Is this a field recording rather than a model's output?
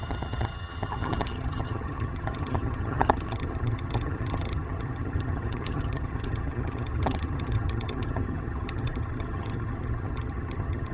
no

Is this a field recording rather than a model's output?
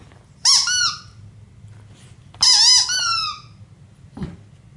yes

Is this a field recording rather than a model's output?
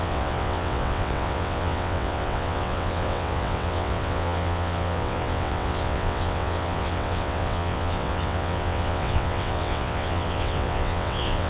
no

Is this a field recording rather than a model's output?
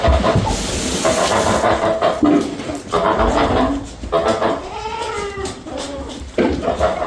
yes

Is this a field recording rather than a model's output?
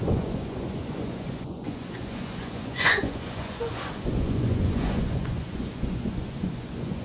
no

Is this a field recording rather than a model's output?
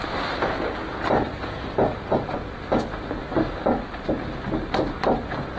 yes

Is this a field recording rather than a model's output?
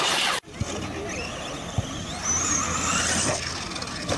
yes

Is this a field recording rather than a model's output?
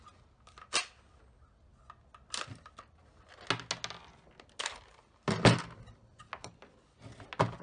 yes